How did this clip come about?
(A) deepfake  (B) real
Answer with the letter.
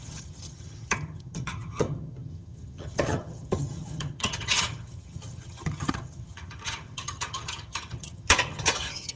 A